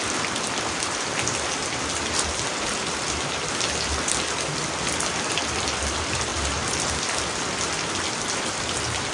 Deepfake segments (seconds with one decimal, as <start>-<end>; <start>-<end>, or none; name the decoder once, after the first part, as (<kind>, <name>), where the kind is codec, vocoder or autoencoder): none